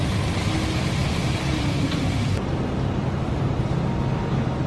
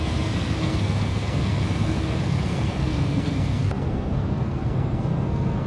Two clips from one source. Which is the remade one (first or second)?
second